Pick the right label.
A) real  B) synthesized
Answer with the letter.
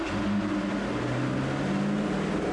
A